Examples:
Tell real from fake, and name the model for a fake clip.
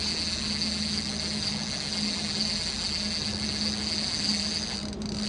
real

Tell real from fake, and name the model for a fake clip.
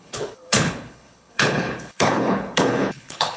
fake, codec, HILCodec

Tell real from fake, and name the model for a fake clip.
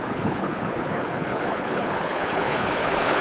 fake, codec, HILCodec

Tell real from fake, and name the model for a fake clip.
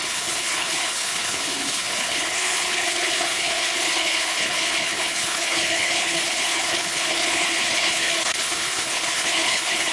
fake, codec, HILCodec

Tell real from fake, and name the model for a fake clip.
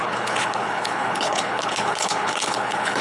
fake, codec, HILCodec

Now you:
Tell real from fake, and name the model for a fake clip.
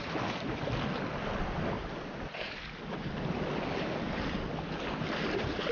real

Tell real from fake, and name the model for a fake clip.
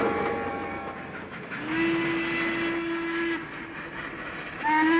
real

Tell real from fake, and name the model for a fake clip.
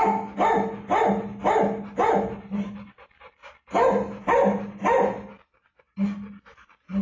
real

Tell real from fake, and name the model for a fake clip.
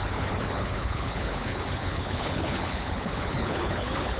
fake, codec, HILCodec